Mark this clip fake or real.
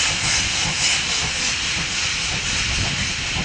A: real